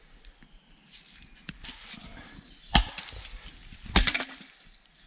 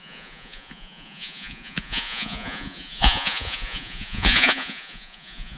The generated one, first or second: second